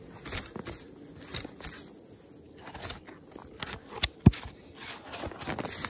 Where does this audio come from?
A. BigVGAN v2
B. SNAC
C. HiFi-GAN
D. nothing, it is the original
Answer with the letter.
D